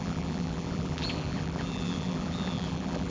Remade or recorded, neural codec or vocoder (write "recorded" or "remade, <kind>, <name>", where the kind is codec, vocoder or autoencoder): remade, vocoder, BigVGAN v2